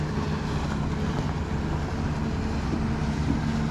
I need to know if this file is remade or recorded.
recorded